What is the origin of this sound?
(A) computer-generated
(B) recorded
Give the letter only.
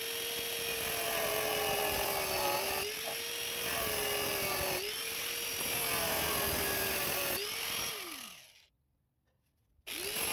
B